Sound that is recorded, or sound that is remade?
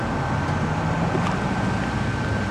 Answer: recorded